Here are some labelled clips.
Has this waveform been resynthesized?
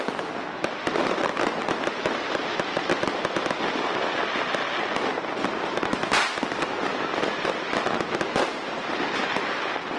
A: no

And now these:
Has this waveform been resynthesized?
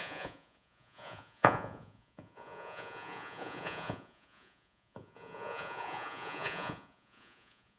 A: yes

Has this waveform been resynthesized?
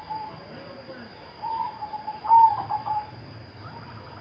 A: no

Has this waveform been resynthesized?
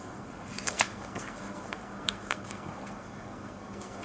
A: yes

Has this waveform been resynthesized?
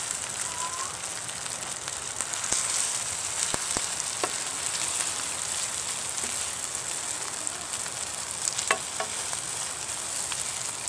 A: no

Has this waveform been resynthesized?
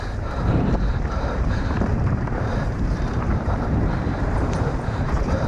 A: yes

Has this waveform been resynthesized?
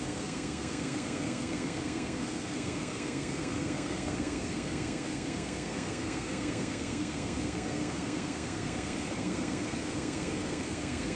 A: yes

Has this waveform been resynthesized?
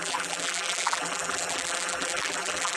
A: yes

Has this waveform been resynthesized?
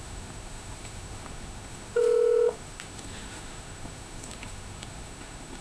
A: yes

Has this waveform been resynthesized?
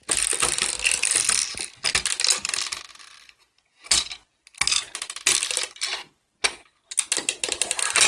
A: no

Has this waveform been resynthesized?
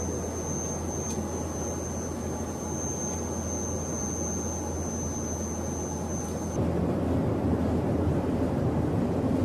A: no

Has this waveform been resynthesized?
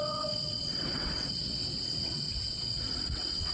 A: yes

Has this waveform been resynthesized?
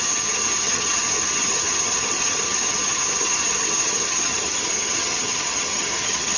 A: yes